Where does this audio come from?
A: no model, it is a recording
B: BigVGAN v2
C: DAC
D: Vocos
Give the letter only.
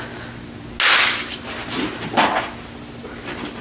A